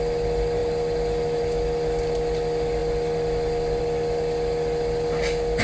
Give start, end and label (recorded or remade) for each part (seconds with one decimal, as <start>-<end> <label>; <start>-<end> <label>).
0.0-5.6 recorded